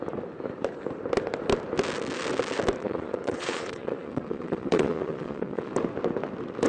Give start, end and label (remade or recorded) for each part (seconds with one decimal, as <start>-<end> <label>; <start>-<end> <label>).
0.0-2.8 recorded; 2.8-5.7 remade; 5.7-6.7 recorded

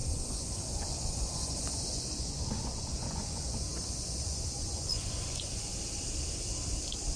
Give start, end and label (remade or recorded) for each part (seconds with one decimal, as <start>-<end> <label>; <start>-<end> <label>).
0.0-5.7 remade; 5.7-7.2 recorded

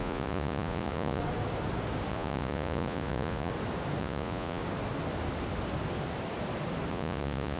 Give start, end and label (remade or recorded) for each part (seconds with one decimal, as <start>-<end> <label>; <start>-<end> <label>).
0.0-1.2 remade; 1.2-2.1 recorded; 2.1-3.5 remade; 3.5-4.0 recorded; 4.0-4.6 remade; 4.6-6.9 recorded; 6.9-7.6 remade

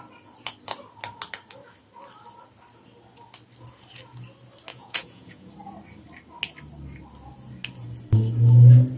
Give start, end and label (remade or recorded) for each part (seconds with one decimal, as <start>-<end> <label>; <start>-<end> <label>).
0.0-4.7 recorded; 4.7-5.5 remade; 5.5-9.0 recorded

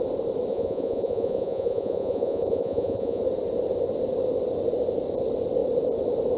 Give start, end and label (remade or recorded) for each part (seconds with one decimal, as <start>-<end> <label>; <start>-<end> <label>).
0.0-0.5 recorded; 0.5-3.2 remade; 3.2-6.4 recorded

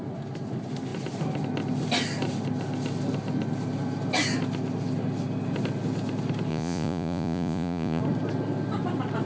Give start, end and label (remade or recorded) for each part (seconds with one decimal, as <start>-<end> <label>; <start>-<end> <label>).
0.0-6.5 recorded; 6.5-8.0 remade; 8.0-9.3 recorded